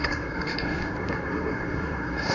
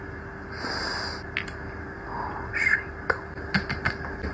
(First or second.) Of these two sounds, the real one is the second